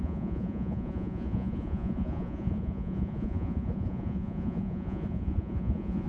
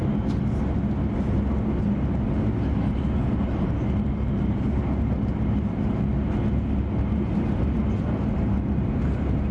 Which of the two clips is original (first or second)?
second